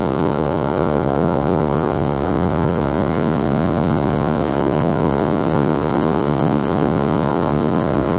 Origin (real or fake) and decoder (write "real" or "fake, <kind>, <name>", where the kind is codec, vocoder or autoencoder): fake, vocoder, Vocos